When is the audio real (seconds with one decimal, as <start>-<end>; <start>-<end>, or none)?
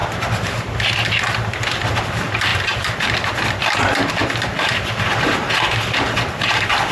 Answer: 0.0-2.0; 4.2-4.9